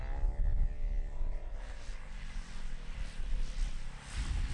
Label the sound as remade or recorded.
recorded